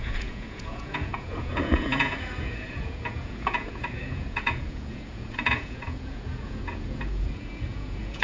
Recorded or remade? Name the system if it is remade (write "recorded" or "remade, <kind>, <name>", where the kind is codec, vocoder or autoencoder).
remade, vocoder, Vocos